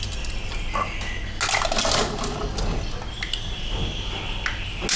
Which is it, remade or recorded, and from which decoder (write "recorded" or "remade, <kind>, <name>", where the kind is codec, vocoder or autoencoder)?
recorded